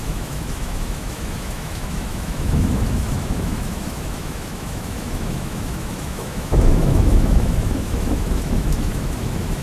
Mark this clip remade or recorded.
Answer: remade